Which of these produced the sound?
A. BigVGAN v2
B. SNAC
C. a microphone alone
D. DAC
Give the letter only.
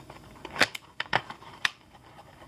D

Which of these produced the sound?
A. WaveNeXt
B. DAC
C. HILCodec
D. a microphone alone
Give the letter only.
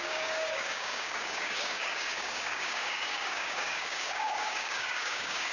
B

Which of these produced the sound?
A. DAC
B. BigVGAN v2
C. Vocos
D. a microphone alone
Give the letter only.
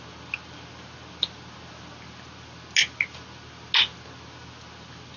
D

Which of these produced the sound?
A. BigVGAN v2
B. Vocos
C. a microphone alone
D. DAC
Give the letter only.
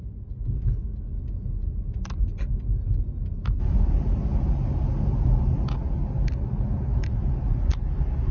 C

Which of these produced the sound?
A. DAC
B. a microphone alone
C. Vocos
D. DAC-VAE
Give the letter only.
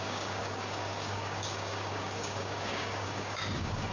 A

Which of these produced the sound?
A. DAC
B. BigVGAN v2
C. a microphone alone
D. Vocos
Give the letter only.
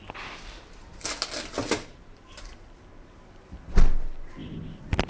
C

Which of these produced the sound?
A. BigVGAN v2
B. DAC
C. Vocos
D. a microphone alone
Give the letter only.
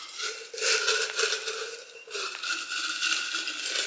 D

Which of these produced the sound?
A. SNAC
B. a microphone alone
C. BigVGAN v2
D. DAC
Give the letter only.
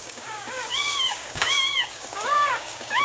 D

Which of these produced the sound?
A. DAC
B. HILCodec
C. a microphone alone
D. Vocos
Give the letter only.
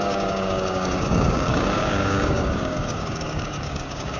A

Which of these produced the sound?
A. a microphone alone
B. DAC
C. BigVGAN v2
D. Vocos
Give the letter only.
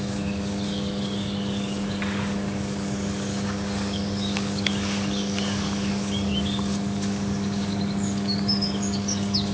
B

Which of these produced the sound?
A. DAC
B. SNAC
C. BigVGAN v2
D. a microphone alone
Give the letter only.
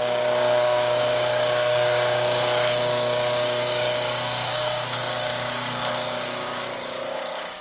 A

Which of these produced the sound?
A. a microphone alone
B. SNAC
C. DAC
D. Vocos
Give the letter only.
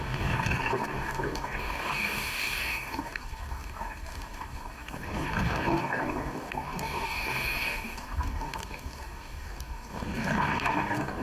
C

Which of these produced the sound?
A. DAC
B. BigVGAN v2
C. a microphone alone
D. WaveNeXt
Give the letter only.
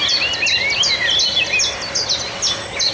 C